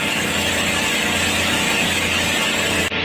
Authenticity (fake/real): real